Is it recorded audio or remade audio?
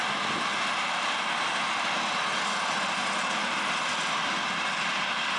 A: recorded